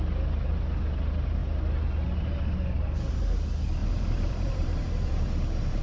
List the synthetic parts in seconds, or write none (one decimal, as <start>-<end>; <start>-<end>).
3.8-5.8